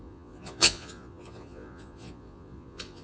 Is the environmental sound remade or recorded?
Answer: remade